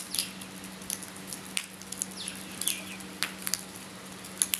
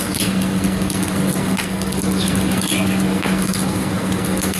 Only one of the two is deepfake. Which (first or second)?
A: second